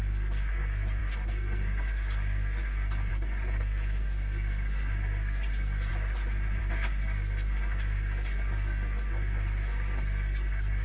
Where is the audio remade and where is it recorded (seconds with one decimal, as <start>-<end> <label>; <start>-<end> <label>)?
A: 0.0-5.9 remade; 5.9-6.6 recorded; 6.6-10.8 remade